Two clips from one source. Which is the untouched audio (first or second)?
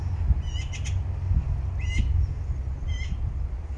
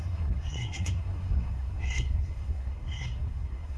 first